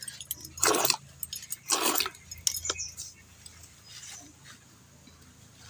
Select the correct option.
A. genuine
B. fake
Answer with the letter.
A